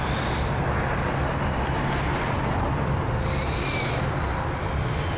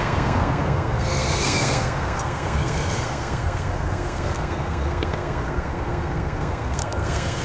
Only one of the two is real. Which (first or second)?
first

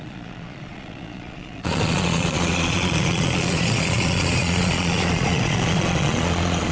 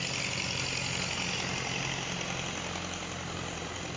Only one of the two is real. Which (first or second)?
second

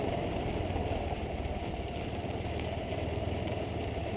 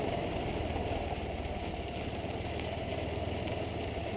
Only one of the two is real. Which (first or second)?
second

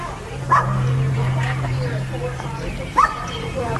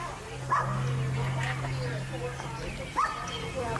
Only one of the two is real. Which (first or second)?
second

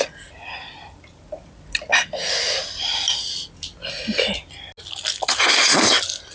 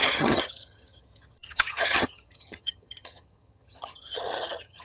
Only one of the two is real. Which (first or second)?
first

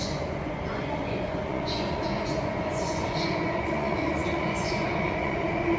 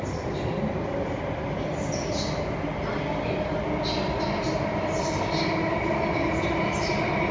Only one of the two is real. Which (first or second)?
second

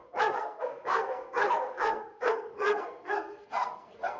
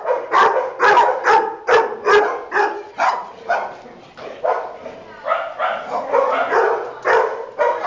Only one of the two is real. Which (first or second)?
second